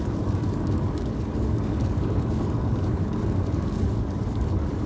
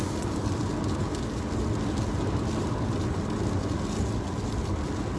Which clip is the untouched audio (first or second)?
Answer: second